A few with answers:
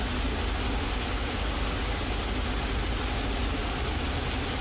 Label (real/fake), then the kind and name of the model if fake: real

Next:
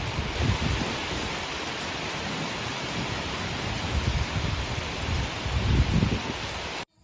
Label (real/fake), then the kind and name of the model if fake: fake, vocoder, BigVGAN v2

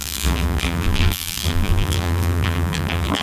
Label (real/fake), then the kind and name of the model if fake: fake, vocoder, BigVGAN v2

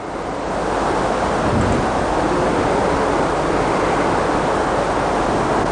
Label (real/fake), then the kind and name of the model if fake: real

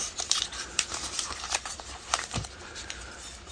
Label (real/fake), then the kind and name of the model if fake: fake, vocoder, BigVGAN v2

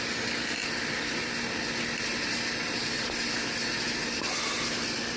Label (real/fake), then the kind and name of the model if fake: real